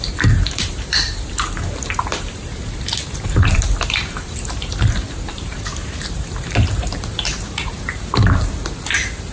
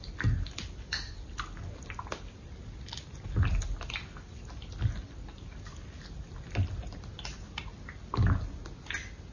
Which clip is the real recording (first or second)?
second